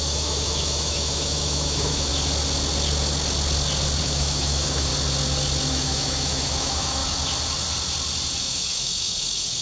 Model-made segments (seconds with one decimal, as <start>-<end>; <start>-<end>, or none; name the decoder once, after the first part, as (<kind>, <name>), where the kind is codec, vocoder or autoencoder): 0.0-2.1 (autoencoder, DAC-VAE); 4.0-4.9; 5.7-7.0; 8.4-9.6